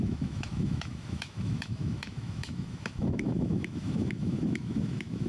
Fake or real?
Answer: fake